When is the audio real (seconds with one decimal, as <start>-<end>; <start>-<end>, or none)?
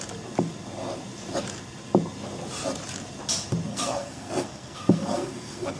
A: 0.0-3.7